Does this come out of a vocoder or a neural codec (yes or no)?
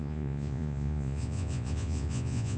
yes